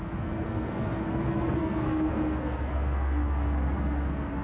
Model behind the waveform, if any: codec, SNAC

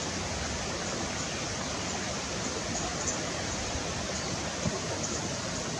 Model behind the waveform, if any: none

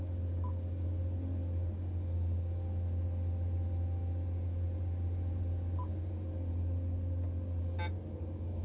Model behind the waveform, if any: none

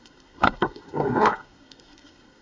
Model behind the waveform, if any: codec, SNAC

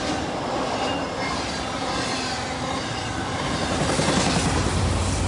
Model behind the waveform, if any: none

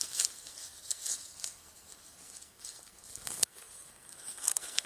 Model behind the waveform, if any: codec, SNAC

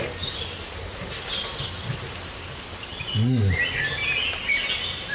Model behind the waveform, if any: none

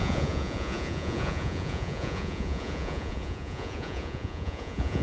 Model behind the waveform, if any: vocoder, Vocos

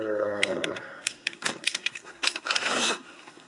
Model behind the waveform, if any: codec, SNAC